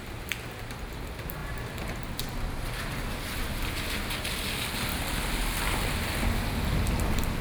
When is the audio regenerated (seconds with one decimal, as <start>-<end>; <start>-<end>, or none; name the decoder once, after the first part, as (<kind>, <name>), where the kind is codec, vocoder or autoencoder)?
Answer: none